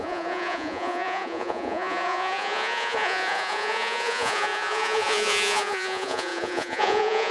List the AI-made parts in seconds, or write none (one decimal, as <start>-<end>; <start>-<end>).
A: 0.0-7.3